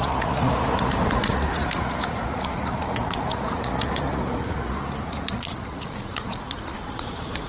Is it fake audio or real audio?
fake